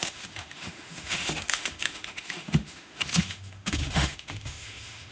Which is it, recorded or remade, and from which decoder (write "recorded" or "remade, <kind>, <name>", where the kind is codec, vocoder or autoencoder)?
remade, autoencoder, DAC-VAE